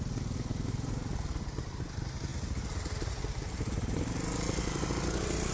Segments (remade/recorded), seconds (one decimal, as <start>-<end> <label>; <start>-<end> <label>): 0.0-5.5 recorded